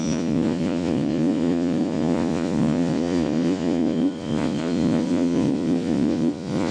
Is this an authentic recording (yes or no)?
no